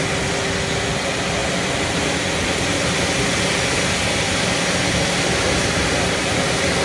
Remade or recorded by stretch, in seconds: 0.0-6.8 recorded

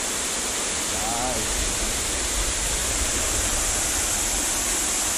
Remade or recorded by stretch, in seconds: 0.0-5.2 recorded

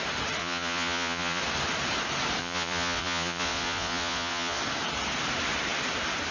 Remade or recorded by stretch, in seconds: 0.0-0.4 recorded; 0.4-1.4 remade; 1.4-2.4 recorded; 2.4-4.6 remade; 4.6-6.3 recorded

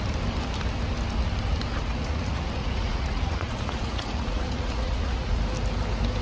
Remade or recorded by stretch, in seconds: 0.0-1.8 recorded; 1.8-5.4 remade; 5.4-6.2 recorded

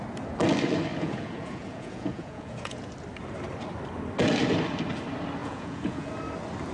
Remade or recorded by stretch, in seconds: 0.0-0.9 recorded; 0.9-2.9 remade; 2.9-5.4 recorded; 5.4-6.1 remade; 6.1-6.7 recorded

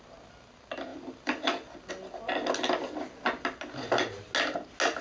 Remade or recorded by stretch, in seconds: 0.0-5.0 recorded

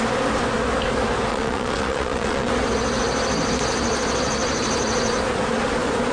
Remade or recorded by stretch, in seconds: 0.0-1.3 recorded; 1.3-2.5 remade; 2.5-6.1 recorded

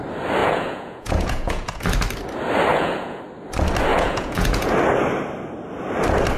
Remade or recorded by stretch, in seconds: 0.0-0.4 recorded; 0.4-1.8 remade; 1.8-2.7 recorded; 2.7-3.2 remade; 3.2-3.9 recorded; 3.9-4.7 remade; 4.7-6.4 recorded